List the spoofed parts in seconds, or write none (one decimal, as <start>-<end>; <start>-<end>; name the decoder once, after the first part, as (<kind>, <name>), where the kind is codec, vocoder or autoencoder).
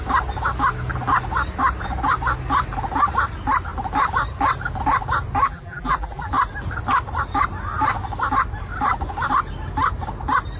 5.4-6.3 (vocoder, BigVGAN v2)